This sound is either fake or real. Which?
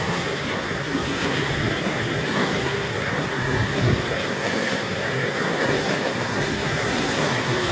fake